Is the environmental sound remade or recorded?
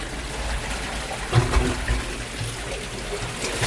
recorded